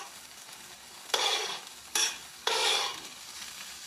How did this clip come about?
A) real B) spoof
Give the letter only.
B